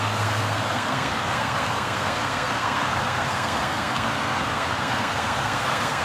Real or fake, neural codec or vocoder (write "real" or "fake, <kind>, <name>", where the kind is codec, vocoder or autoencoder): fake, codec, SNAC